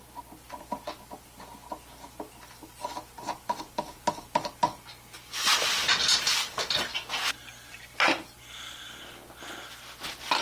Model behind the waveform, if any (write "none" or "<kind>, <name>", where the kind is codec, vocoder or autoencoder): none